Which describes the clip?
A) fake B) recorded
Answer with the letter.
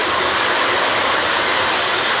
B